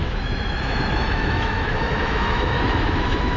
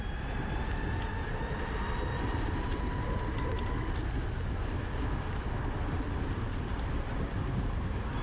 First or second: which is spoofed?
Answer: first